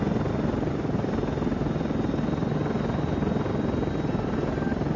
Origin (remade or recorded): recorded